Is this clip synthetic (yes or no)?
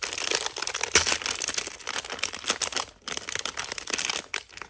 no